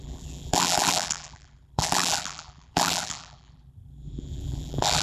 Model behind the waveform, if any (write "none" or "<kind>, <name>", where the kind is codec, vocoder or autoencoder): vocoder, BigVGAN v2